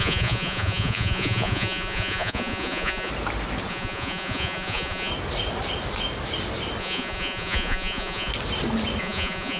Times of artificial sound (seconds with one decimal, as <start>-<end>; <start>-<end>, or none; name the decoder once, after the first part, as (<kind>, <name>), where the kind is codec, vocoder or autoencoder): 0.0-3.1 (vocoder, Vocos); 3.7-5.1; 6.8-8.3; 9.0-9.6